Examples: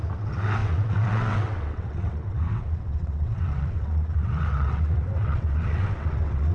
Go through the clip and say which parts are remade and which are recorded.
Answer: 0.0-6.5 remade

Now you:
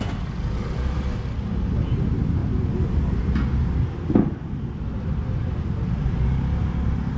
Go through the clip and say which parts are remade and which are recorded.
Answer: 0.0-7.2 recorded

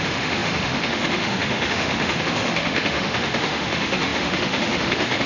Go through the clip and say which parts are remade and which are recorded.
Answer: 0.0-5.3 remade

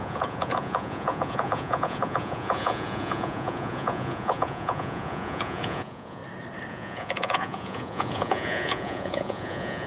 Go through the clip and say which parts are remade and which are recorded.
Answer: 0.0-6.2 remade; 6.2-6.7 recorded; 6.7-9.9 remade